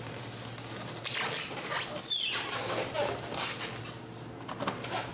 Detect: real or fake real